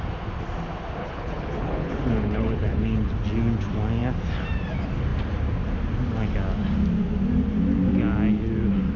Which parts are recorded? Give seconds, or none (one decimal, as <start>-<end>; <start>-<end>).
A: 0.0-1.0; 3.1-9.0

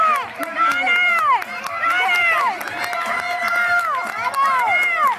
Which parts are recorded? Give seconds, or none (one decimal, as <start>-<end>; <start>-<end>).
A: 0.0-5.2

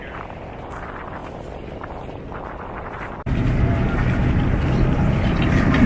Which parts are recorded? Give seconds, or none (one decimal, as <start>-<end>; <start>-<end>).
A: 0.0-5.9

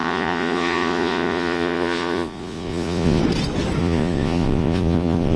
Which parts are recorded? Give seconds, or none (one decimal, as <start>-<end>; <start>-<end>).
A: 3.2-3.8

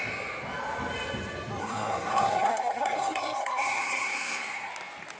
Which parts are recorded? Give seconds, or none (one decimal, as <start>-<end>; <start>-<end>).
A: 0.0-1.6; 4.7-5.2

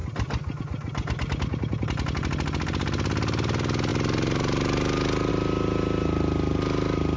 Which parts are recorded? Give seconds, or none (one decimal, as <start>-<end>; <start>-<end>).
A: 0.0-7.2

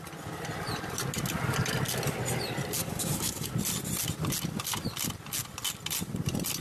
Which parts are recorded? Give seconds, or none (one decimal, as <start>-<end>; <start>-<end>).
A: 0.0-2.8; 3.5-6.6